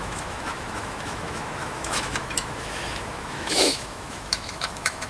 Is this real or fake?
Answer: fake